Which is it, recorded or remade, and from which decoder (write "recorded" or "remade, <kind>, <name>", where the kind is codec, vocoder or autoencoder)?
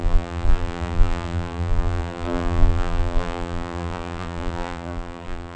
remade, vocoder, BigVGAN v2